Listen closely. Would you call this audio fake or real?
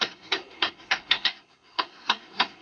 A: fake